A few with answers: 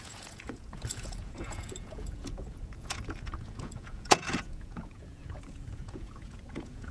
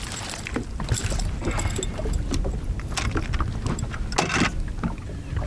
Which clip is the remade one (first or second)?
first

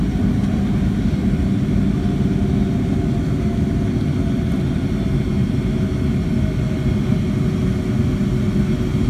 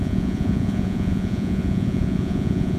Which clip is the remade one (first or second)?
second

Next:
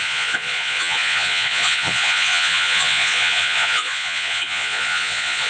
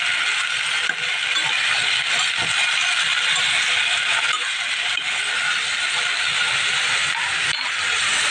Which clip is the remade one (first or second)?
first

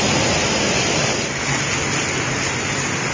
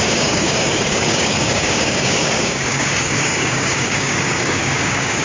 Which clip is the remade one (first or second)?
second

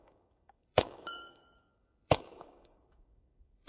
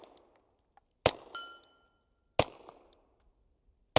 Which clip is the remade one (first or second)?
first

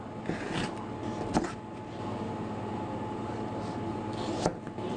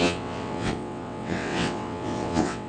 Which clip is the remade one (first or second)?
second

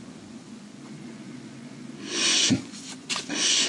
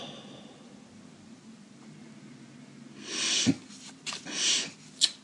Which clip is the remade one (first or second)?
first